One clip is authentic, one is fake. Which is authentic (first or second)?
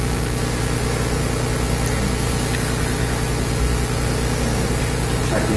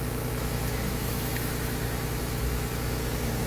first